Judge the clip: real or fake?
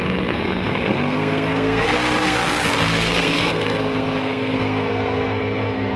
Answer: fake